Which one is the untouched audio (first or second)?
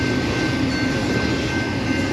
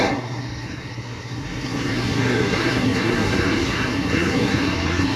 first